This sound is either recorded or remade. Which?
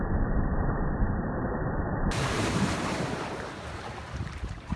remade